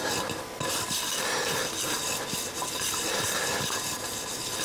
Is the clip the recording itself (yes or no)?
yes